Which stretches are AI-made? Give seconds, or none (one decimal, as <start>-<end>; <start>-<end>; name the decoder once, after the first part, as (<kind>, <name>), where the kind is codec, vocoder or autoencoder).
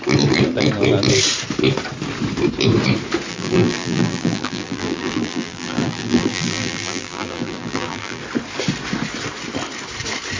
3.3-8.2 (vocoder, BigVGAN v2)